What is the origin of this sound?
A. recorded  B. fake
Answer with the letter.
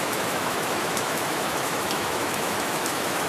B